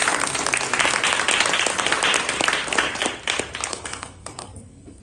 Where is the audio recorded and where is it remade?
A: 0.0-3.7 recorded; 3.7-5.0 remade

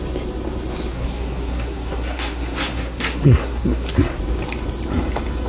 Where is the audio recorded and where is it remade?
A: 0.0-0.9 recorded; 0.9-4.2 remade; 4.2-5.5 recorded

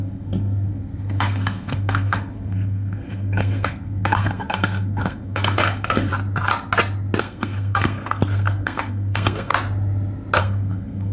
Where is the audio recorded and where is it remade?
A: 0.0-6.1 remade; 6.1-7.2 recorded; 7.2-9.5 remade; 9.5-10.4 recorded; 10.4-11.1 remade

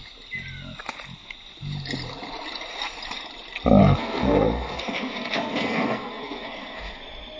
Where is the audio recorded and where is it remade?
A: 0.0-3.8 recorded; 3.8-7.0 remade; 7.0-7.4 recorded